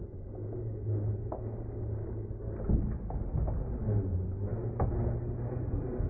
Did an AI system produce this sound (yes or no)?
no